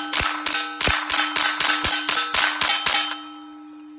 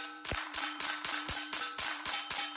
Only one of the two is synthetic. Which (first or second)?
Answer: second